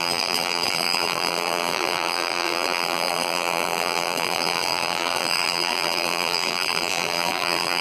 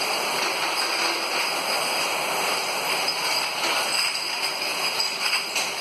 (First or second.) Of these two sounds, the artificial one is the first